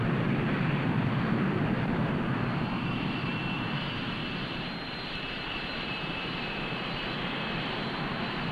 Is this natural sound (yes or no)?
no